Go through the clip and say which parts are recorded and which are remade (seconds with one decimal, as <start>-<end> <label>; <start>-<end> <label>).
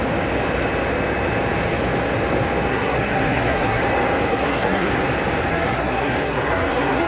0.0-2.7 recorded; 2.7-3.8 remade; 3.8-4.3 recorded; 4.3-4.9 remade; 4.9-5.5 recorded; 5.5-7.1 remade